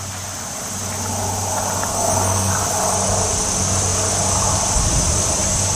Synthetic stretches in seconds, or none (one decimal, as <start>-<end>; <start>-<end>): 1.9-2.5